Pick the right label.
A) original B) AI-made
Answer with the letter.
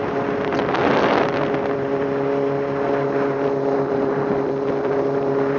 B